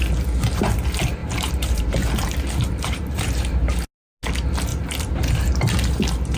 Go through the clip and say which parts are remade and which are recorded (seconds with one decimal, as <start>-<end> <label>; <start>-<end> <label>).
0.0-1.2 recorded; 1.2-3.7 remade; 3.7-4.7 recorded; 4.7-6.0 remade; 6.0-6.4 recorded